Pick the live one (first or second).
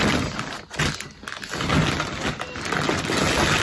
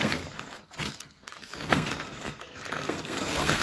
first